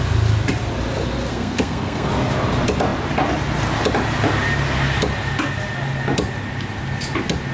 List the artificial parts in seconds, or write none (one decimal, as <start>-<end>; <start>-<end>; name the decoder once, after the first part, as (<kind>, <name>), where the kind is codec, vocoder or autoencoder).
1.3-2.1 (codec, SNAC)